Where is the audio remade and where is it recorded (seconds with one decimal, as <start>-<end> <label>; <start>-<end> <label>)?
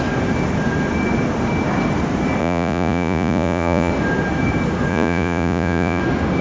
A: 0.0-2.4 recorded; 2.4-3.9 remade; 3.9-4.9 recorded; 4.9-6.0 remade; 6.0-6.4 recorded